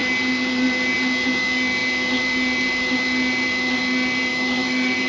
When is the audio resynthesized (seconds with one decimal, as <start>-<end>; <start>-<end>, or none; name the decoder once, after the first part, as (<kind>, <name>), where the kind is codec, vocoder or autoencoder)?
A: 4.3-5.1 (autoencoder, DAC-VAE)